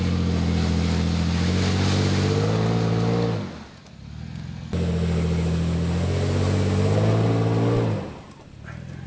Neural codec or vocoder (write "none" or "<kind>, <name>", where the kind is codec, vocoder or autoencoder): none